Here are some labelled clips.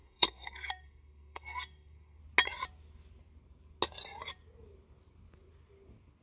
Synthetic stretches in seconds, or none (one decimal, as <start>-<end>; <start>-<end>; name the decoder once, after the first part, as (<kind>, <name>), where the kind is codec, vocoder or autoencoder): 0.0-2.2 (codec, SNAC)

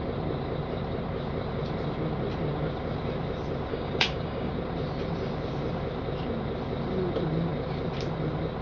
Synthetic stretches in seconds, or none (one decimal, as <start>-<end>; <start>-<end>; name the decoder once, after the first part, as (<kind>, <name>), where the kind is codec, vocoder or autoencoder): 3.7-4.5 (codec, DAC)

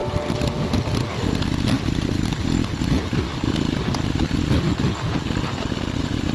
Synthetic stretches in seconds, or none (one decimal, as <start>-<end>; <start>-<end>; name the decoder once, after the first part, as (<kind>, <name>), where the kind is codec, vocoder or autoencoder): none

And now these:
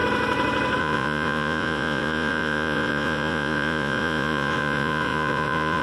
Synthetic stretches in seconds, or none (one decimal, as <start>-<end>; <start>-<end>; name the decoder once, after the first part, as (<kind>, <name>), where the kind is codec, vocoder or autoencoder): 0.8-5.8 (vocoder, Vocos)

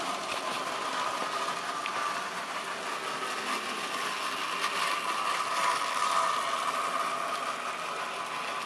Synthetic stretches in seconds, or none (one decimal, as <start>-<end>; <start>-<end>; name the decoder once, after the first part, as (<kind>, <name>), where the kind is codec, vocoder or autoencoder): none